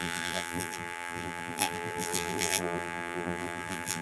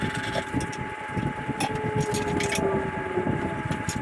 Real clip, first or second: second